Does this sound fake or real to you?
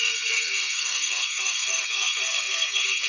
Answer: fake